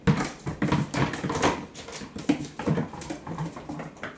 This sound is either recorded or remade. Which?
recorded